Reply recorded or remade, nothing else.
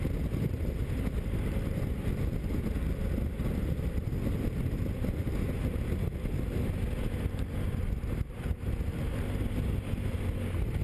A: recorded